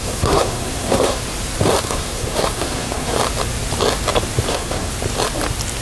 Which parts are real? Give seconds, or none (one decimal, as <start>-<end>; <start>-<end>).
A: 1.2-1.8; 3.1-4.5; 4.9-5.8